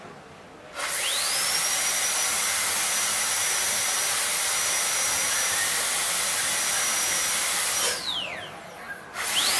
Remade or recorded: recorded